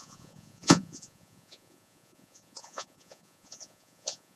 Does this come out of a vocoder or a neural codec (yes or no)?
yes